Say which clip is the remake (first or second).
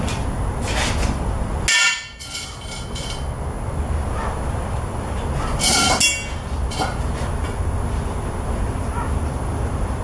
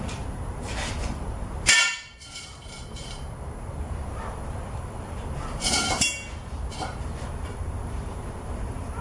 second